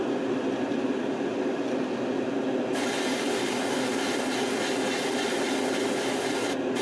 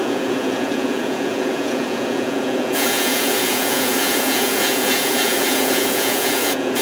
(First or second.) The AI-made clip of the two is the second